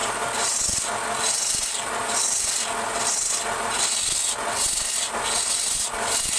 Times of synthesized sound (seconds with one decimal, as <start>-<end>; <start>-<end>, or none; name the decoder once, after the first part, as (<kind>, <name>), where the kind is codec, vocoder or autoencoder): 0.0-3.8 (vocoder, BigVGAN v2)